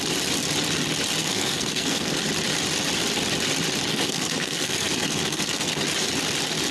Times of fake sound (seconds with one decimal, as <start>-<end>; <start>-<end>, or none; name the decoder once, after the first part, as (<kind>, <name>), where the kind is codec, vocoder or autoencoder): 1.2-2.2 (codec, SNAC); 3.9-5.8